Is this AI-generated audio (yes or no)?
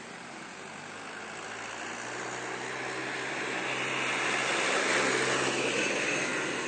no